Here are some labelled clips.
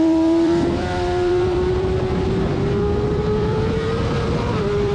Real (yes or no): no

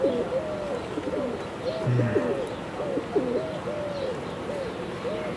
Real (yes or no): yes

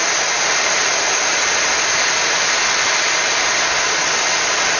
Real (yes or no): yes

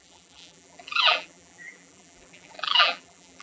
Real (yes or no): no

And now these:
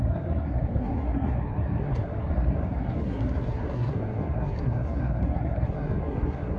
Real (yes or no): no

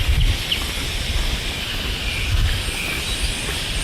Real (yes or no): yes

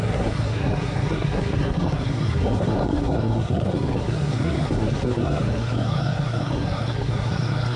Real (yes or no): no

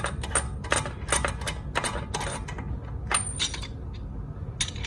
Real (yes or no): yes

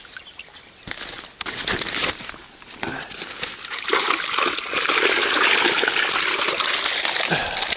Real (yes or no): yes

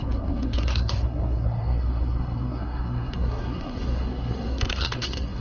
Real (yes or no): no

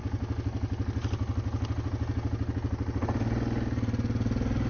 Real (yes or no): yes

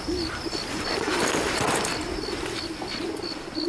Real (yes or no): yes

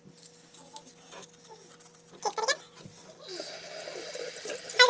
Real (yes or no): yes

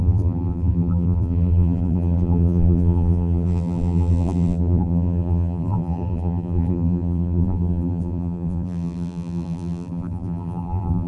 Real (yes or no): no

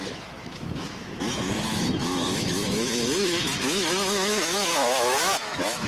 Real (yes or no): no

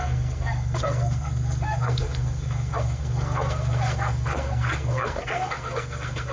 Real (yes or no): no